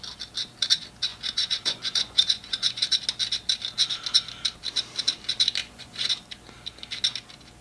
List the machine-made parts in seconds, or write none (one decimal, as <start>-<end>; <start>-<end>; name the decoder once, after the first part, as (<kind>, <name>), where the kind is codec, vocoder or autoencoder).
1.1-3.0 (vocoder, Vocos); 5.6-6.1